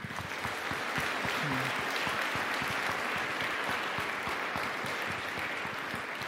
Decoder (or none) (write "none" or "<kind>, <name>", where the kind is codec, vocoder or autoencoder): none